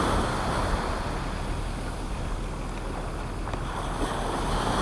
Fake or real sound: real